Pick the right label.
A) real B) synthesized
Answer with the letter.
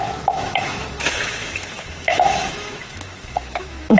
B